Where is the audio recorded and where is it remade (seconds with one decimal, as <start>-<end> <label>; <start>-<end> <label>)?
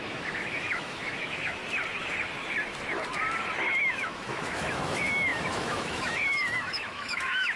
0.0-1.6 remade; 1.6-3.8 recorded; 3.8-7.6 remade